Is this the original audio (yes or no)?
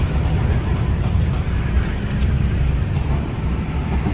no